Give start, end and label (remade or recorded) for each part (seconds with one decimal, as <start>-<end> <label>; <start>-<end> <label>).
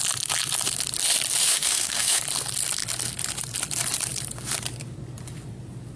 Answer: 0.0-1.4 recorded; 1.4-2.2 remade; 2.2-6.0 recorded